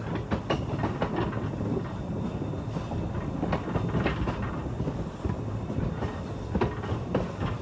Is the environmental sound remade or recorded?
recorded